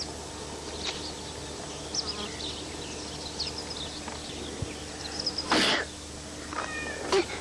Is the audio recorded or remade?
recorded